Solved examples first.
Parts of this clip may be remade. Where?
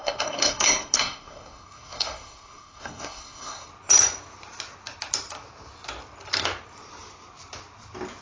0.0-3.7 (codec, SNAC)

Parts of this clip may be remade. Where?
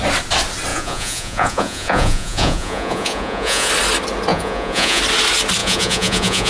0.7-3.7 (vocoder, Vocos); 4.3-5.0; 5.6-6.5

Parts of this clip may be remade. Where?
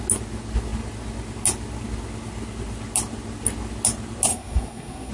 4.3-5.1 (codec, SNAC)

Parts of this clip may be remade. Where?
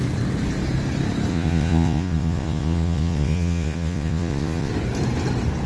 1.3-4.7 (vocoder, Vocos)